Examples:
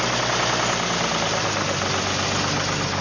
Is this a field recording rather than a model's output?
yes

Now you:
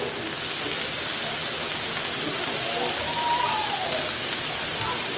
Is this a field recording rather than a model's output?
yes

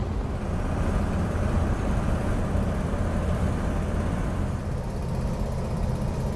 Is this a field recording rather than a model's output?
yes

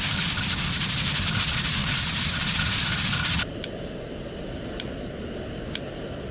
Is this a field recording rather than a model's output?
yes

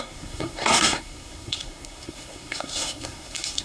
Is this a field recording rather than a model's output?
no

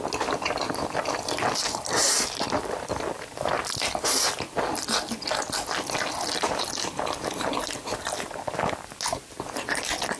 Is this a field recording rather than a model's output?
yes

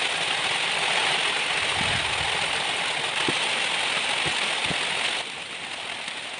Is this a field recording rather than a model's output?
yes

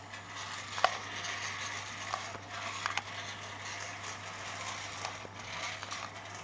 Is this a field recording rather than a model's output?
yes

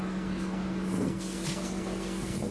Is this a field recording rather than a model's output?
no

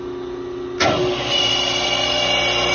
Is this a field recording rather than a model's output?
yes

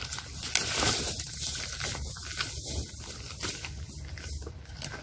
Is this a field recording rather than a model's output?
yes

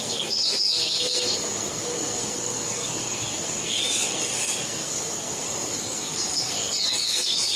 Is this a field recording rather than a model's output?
no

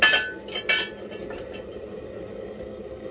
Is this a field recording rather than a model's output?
yes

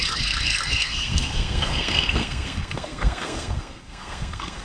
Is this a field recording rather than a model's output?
no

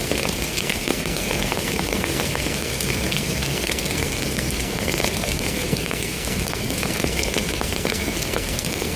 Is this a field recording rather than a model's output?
no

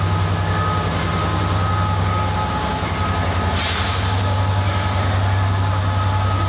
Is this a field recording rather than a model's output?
yes